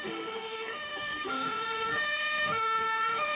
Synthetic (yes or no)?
yes